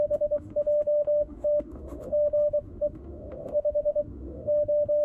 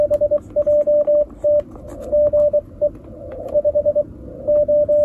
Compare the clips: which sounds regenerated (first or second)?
first